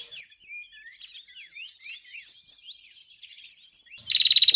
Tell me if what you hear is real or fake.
real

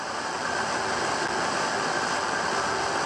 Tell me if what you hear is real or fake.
real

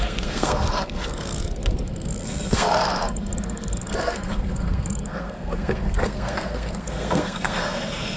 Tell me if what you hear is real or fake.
fake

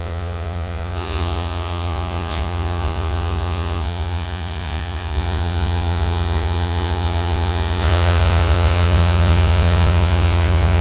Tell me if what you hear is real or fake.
fake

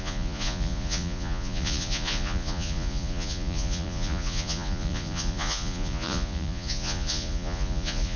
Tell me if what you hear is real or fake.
fake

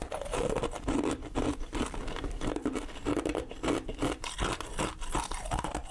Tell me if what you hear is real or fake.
real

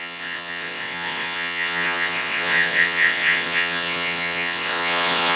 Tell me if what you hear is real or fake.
fake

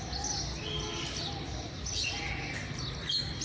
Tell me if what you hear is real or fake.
real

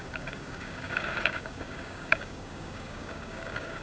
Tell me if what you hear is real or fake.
fake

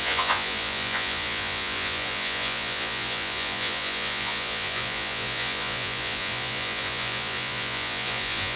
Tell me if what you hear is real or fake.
fake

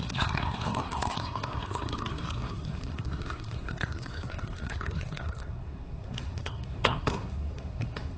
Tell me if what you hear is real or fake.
fake